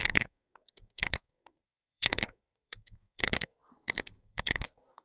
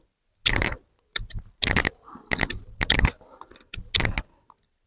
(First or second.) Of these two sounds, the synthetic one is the first